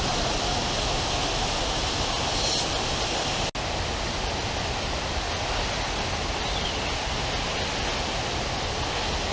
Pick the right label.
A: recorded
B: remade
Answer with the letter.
A